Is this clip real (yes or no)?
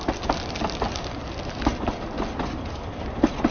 yes